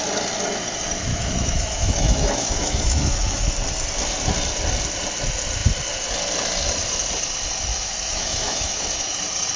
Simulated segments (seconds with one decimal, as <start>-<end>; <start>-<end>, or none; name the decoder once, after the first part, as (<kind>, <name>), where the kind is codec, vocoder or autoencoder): 1.1-3.5 (autoencoder, DAC-VAE); 7.7-9.2